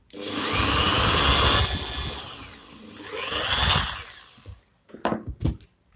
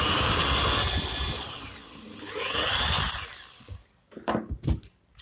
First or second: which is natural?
first